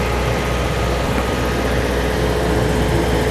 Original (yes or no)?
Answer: yes